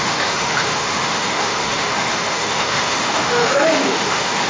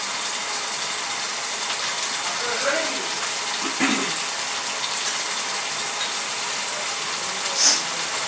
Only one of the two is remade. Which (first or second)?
first